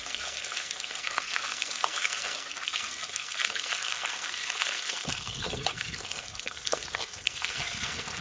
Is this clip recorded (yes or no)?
no